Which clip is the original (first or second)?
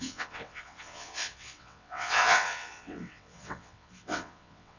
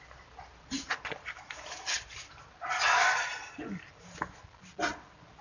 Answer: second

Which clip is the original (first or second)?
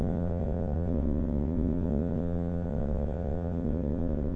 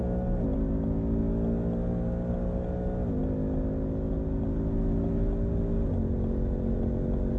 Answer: second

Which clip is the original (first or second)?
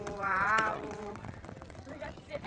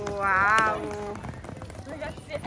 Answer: second